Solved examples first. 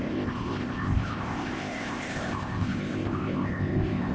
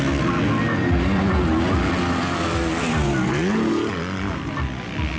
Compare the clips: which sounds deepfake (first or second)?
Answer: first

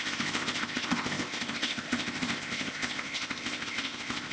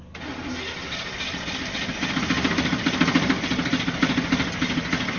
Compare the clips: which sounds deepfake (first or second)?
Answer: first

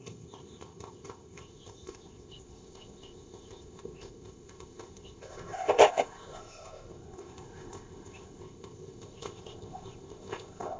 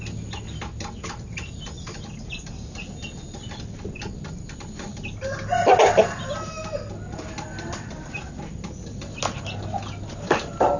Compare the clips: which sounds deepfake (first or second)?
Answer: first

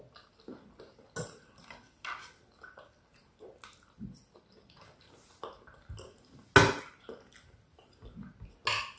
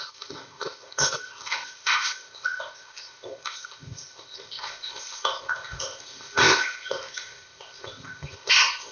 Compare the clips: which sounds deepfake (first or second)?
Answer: second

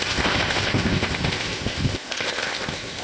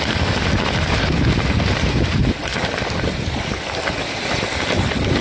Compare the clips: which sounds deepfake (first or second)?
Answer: first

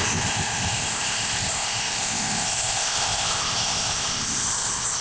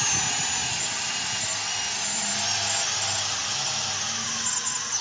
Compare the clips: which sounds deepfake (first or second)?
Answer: first